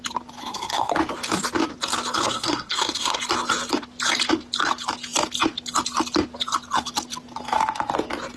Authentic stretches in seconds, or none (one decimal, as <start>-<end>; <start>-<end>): 0.0-0.4; 0.9-2.2; 3.2-8.4